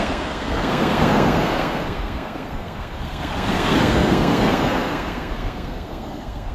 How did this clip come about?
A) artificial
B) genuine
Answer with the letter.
A